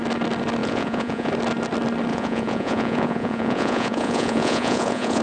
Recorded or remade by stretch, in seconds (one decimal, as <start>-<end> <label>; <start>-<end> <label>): 0.0-0.6 recorded; 0.6-1.3 remade; 1.3-2.1 recorded; 2.1-5.2 remade